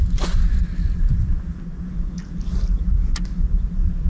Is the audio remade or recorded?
recorded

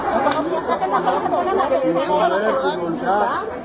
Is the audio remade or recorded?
recorded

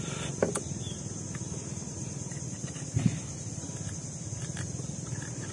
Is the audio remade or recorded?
recorded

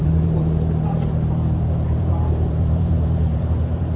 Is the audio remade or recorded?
remade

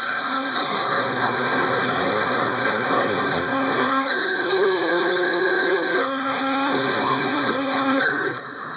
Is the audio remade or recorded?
remade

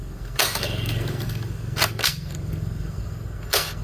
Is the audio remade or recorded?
remade